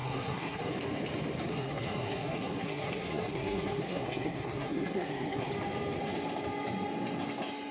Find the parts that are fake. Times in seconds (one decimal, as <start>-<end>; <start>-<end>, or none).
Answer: 0.0-0.7; 1.5-5.5